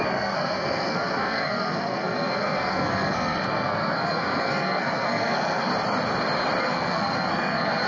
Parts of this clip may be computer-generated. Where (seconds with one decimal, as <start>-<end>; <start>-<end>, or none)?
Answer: 0.0-5.7; 6.6-7.9